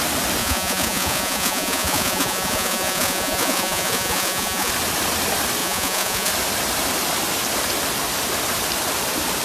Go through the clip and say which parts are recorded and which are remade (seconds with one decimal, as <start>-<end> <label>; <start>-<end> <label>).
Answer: 0.0-0.4 recorded; 0.4-4.7 remade; 4.7-5.6 recorded; 5.6-6.3 remade; 6.3-9.4 recorded